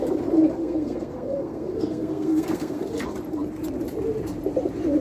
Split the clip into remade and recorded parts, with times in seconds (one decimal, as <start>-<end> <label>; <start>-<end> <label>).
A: 0.0-0.6 recorded; 0.6-2.9 remade; 2.9-5.0 recorded